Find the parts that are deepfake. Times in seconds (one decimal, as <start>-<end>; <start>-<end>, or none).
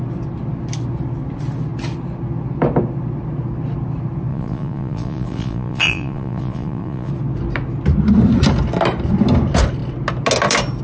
4.3-7.1